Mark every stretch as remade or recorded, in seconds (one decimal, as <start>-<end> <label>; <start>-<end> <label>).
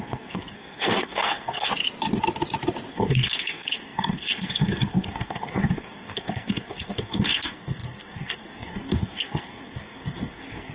0.0-1.7 remade; 1.7-2.9 recorded; 2.9-10.7 remade